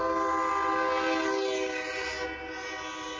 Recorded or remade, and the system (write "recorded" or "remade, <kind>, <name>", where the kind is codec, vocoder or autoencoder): recorded